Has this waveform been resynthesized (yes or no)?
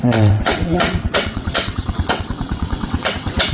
yes